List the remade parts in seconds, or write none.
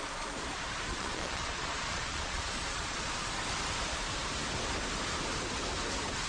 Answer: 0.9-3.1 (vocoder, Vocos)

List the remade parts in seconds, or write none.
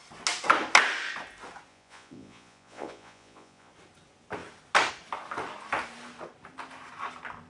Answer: 1.7-3.7 (vocoder, Vocos)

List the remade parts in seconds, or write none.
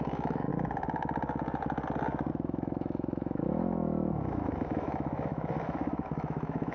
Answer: 0.0-0.5 (autoencoder, DAC-VAE); 2.3-6.7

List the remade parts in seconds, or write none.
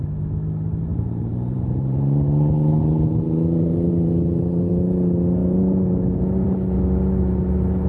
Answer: 0.9-3.9 (vocoder, BigVGAN v2)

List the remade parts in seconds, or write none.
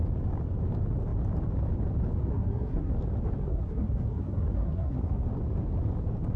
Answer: 2.3-2.9 (codec, SNAC); 3.4-5.3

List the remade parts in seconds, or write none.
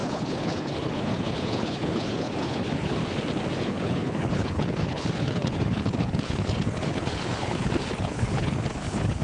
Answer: 0.0-3.0 (codec, HILCodec); 3.6-9.2